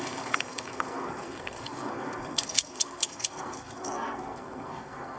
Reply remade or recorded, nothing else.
remade